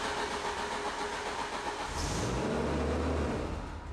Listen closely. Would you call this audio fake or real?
real